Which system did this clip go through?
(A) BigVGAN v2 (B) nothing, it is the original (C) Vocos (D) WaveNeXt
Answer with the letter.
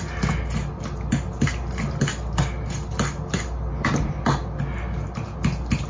B